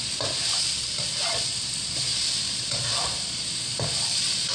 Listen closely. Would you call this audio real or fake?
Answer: fake